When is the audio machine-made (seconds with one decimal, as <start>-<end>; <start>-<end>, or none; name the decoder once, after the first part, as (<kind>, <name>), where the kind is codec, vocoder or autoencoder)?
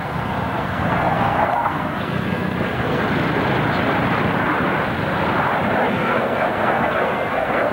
0.0-3.0 (codec, SNAC); 5.9-7.7